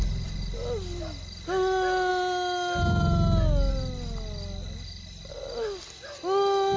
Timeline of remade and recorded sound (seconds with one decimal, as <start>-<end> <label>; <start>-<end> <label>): 0.0-6.8 recorded